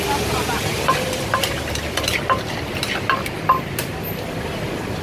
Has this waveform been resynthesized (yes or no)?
no